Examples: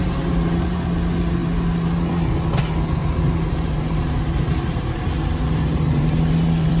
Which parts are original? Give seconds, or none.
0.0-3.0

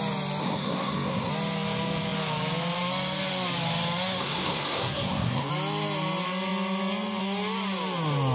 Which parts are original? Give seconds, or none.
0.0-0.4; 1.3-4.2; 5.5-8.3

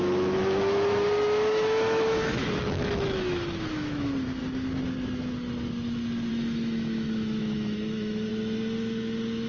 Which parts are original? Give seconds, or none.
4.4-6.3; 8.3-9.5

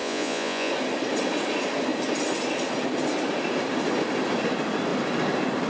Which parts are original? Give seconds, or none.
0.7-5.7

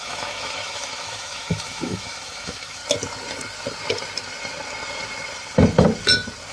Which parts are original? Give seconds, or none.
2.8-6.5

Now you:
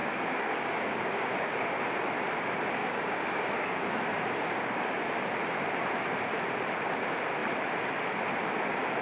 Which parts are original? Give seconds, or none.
1.8-2.8; 5.1-9.0

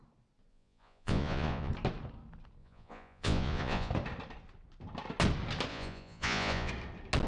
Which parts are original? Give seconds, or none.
0.0-0.5; 1.7-2.6; 3.9-5.7; 6.7-7.3